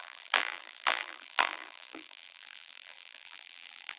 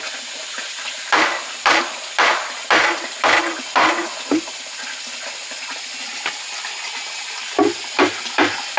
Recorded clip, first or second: second